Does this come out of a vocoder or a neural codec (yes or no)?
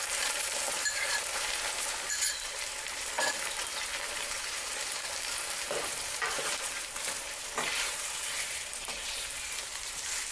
yes